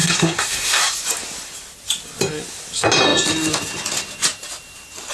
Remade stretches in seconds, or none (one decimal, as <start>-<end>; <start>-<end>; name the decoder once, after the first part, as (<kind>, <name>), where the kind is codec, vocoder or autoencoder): 0.0-0.8 (codec, SNAC)

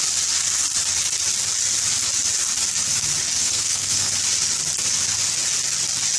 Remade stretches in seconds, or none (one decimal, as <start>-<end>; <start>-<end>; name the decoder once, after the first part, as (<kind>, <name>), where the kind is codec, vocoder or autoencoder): 3.4-4.1 (codec, SNAC)

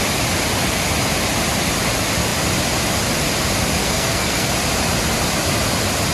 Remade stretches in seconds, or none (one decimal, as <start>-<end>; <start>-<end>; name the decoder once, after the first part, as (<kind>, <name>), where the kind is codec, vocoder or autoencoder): 3.8-4.5 (codec, SNAC)

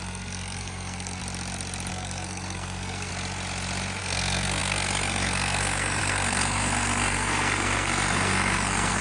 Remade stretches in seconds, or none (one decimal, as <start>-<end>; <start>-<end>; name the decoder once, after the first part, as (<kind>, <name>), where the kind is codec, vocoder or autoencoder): 0.0-1.2 (codec, SNAC); 1.9-3.1; 4.0-9.0

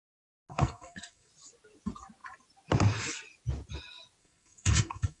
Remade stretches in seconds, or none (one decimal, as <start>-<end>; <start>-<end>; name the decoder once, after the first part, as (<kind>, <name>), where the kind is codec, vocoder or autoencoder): 0.5-1.3 (codec, SNAC); 4.2-5.2

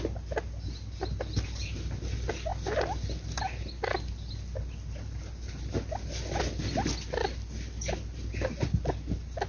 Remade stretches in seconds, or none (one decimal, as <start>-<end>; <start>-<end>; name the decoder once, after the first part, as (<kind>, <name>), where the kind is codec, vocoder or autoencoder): none